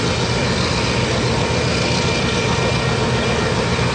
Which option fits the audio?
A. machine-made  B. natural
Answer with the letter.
B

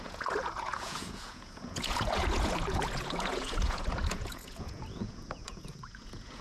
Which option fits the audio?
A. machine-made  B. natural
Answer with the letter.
A